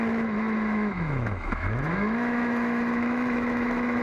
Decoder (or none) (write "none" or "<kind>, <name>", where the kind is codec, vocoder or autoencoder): autoencoder, DAC-VAE